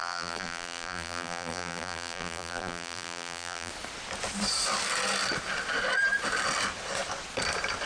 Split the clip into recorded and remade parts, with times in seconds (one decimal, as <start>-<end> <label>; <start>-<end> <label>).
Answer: 0.0-3.7 remade; 3.7-7.9 recorded